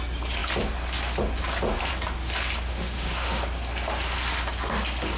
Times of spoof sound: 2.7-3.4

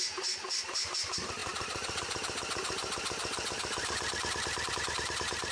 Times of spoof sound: none